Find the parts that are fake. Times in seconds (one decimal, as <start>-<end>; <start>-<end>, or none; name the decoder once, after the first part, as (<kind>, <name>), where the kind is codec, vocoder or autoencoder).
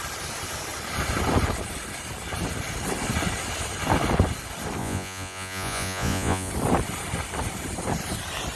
4.8-6.5 (vocoder, Vocos)